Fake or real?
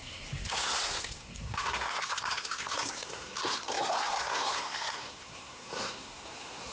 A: fake